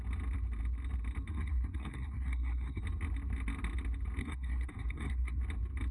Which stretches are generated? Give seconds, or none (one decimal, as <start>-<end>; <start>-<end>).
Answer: 1.3-2.8; 4.2-5.4